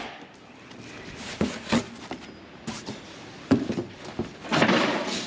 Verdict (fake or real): real